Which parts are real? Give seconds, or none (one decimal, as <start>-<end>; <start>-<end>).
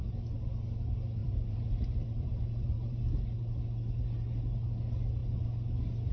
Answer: 0.0-1.2; 3.6-6.1